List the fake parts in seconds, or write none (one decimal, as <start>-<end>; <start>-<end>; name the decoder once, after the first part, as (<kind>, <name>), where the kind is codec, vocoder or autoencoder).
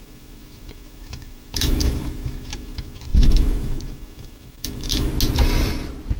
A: 0.0-5.1 (autoencoder, DAC-VAE)